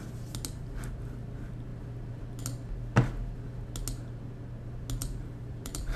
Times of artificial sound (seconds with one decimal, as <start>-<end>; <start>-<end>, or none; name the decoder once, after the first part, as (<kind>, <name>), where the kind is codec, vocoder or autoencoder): 5.0-6.0 (vocoder, BigVGAN v2)